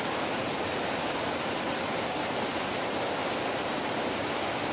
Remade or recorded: recorded